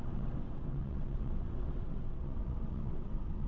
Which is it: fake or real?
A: fake